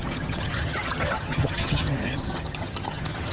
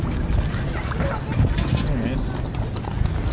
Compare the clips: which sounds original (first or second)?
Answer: second